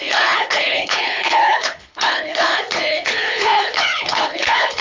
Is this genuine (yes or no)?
no